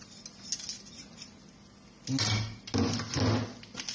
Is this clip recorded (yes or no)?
yes